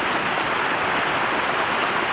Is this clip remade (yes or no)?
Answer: no